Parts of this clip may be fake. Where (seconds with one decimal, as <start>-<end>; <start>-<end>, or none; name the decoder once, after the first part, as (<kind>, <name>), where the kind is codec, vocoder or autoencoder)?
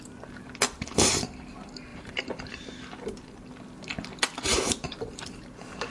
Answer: 0.4-1.2 (vocoder, BigVGAN v2); 1.9-2.5; 4.5-5.1